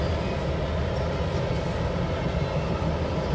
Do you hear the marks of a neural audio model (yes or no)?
no